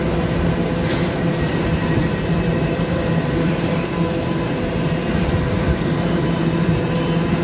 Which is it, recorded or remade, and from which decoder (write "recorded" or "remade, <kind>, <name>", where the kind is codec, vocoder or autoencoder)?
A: remade, vocoder, BigVGAN v2